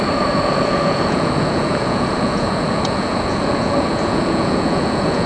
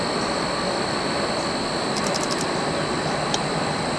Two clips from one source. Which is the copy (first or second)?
first